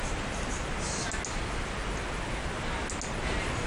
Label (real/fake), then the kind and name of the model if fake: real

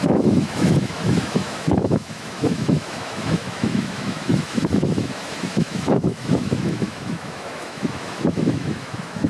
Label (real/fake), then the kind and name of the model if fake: fake, autoencoder, DAC-VAE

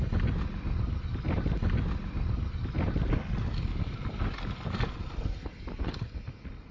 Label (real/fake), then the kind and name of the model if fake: real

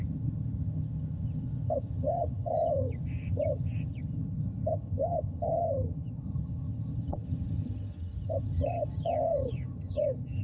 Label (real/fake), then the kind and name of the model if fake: fake, vocoder, HiFi-GAN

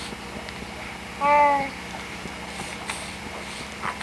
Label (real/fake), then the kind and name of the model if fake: real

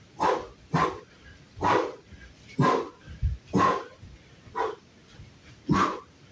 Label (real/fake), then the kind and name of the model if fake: real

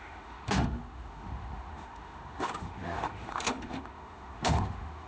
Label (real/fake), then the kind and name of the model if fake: fake, autoencoder, DAC-VAE